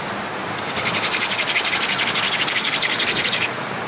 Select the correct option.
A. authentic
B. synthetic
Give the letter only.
A